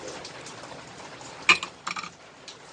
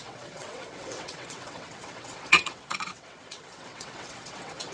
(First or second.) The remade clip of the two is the second